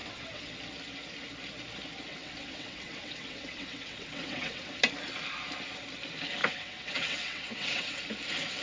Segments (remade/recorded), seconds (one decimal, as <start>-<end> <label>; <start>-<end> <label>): 0.0-0.5 remade; 0.5-2.1 recorded; 2.1-4.8 remade; 4.8-6.4 recorded; 6.4-8.0 remade; 8.0-8.6 recorded